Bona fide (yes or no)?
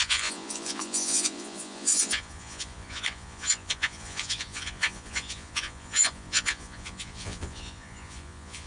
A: no